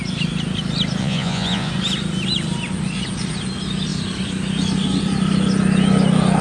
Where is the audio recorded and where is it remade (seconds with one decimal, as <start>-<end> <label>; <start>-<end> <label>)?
0.0-1.0 recorded; 1.0-1.7 remade; 1.7-6.4 recorded